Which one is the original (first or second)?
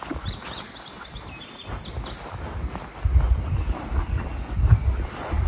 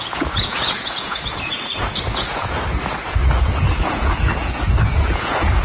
first